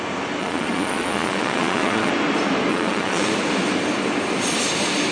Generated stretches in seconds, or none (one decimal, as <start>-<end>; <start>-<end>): 0.4-2.1; 2.7-3.3